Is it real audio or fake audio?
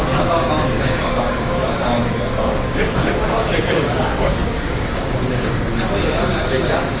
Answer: fake